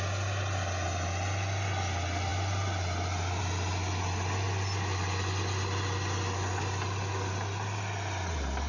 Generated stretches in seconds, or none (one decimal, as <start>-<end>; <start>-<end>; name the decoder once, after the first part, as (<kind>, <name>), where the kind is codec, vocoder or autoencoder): none